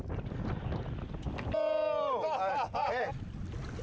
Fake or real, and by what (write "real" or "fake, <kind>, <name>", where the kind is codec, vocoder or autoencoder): real